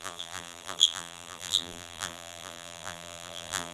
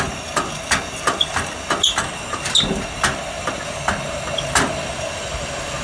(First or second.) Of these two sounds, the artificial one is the first